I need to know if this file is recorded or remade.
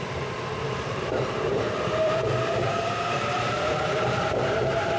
remade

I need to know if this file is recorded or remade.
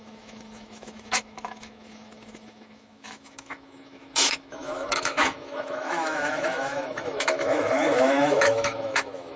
remade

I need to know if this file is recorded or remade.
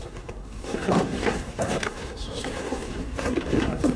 remade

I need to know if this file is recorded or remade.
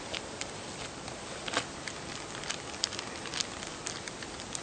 recorded